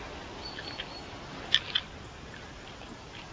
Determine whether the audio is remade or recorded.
recorded